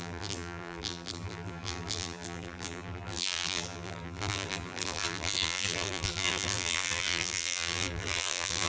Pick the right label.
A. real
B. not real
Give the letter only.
B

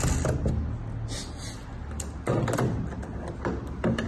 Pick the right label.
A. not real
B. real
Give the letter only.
B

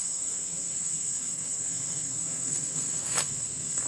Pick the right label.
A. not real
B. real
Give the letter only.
A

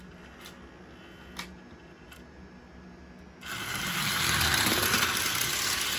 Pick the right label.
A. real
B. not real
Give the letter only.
A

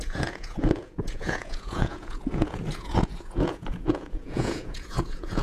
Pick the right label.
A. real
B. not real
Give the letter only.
B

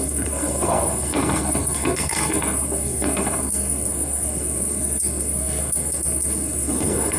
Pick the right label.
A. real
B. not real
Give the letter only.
B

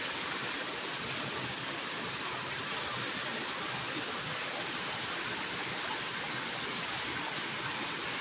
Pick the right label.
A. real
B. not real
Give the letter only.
A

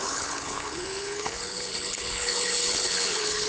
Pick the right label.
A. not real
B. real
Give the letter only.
A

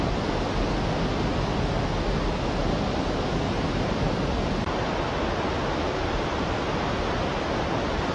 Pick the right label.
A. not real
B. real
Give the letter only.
B